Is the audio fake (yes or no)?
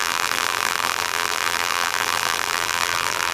yes